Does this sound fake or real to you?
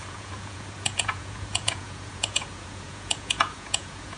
fake